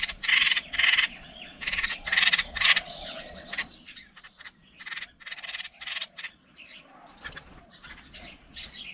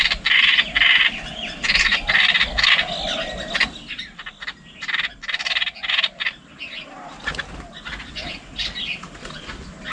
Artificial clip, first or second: first